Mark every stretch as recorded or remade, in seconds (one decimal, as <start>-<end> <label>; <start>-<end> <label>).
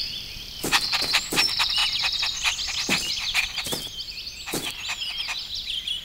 0.0-1.8 remade; 1.8-3.1 recorded; 3.1-6.0 remade